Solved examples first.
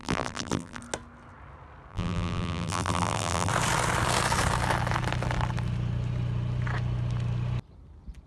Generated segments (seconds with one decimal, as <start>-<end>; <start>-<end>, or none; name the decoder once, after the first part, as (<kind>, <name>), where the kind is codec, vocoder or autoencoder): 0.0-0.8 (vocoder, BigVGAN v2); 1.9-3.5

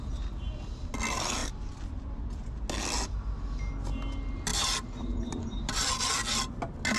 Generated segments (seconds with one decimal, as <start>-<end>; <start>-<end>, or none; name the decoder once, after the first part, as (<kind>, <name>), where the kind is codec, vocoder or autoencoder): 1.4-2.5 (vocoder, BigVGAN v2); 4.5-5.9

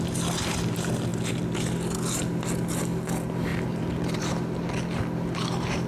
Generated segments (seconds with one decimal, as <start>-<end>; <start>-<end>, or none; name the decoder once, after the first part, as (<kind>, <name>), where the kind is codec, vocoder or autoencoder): 3.5-4.2 (vocoder, BigVGAN v2)

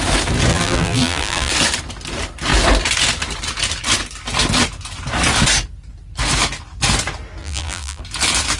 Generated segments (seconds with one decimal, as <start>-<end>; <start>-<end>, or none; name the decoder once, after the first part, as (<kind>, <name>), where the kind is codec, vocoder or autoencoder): 0.5-1.5 (vocoder, BigVGAN v2); 7.4-8.0

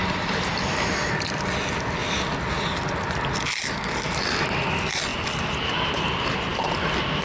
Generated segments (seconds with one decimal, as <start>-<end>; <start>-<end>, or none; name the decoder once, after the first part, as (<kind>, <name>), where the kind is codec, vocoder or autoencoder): 0.0-0.5 (vocoder, BigVGAN v2); 5.1-5.7

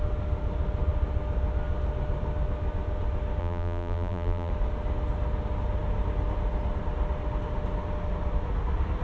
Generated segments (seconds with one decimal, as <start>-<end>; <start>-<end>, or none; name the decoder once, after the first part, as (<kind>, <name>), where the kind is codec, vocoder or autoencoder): 3.4-4.5 (vocoder, BigVGAN v2)

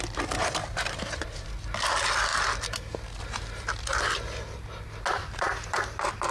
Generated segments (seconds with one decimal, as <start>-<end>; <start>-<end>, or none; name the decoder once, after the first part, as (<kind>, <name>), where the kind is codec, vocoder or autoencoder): 0.6-1.5 (vocoder, BigVGAN v2); 5.2-5.8